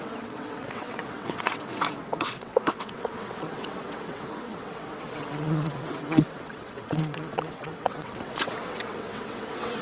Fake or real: fake